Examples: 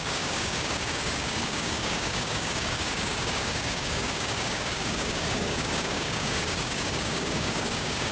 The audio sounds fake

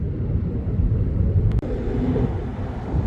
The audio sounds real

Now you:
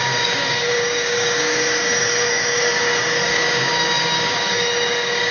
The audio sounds fake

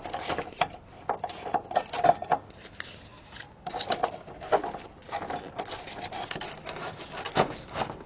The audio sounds real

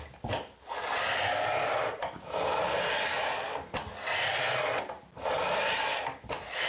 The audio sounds real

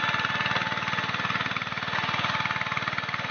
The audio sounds real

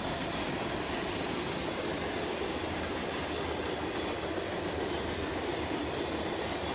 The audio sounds real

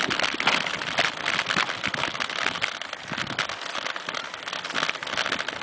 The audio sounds real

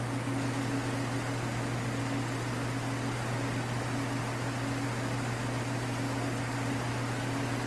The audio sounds real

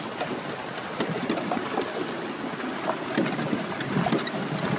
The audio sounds real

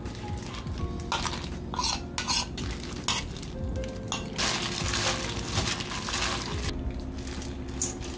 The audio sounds real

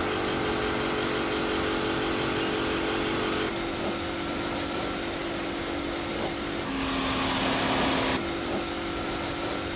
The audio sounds real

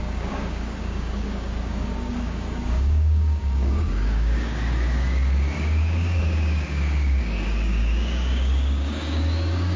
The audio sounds fake